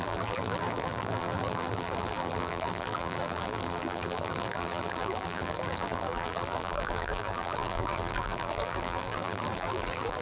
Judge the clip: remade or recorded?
remade